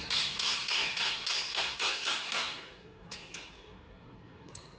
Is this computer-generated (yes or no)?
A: yes